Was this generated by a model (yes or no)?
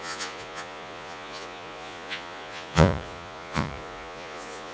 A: yes